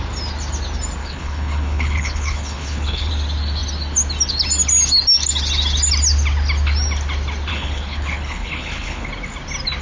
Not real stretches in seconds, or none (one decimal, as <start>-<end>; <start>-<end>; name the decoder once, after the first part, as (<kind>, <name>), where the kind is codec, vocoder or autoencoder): 1.0-3.1 (codec, HILCodec); 7.5-9.1